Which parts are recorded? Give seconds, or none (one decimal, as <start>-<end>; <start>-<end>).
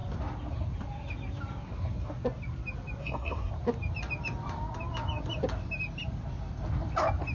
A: 0.0-3.0; 3.5-7.3